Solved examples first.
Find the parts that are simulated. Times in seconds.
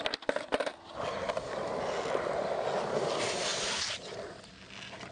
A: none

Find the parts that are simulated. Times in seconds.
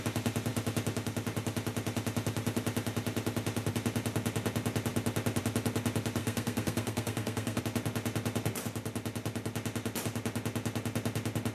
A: 6.2-7.6 (codec, SNAC)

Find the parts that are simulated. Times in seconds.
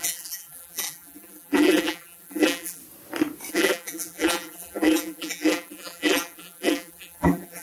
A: 0.0-2.8 (vocoder, BigVGAN v2); 3.5-7.6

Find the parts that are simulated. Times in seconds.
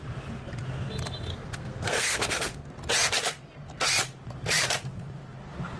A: 1.3-2.7 (codec, SNAC)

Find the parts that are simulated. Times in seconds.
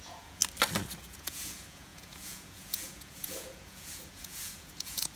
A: 0.0-0.4 (vocoder, Vocos); 1.0-5.2